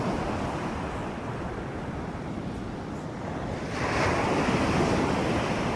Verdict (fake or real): real